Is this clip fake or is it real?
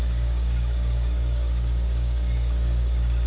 fake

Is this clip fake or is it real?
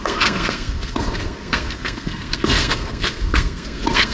fake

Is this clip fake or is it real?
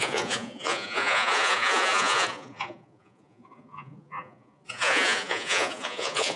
fake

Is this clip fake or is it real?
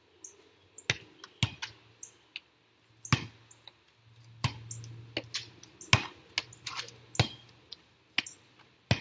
real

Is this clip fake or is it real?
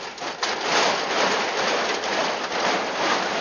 real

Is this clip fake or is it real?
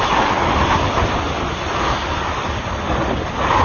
real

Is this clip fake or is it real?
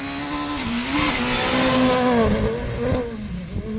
real